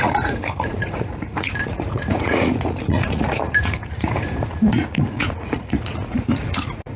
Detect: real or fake fake